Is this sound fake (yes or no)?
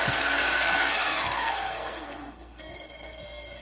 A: yes